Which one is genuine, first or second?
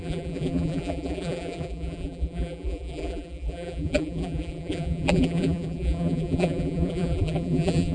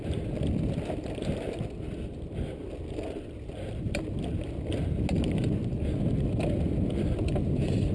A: second